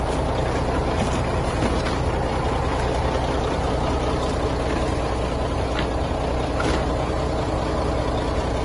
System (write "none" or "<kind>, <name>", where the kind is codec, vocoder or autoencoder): none